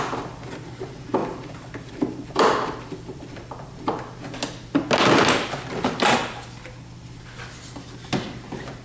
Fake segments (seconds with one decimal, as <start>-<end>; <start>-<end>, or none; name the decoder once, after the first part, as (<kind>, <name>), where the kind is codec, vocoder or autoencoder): 1.2-3.8 (vocoder, BigVGAN v2)